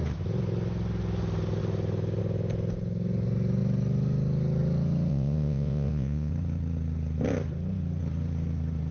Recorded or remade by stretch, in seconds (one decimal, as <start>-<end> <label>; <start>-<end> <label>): 0.0-5.1 recorded; 5.1-6.3 remade; 6.3-8.9 recorded